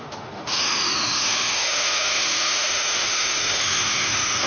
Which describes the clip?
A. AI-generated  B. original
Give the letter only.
A